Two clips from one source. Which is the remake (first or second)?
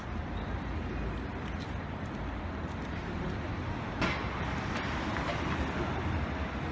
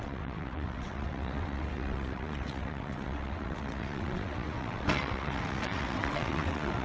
second